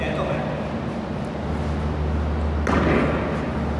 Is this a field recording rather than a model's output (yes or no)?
yes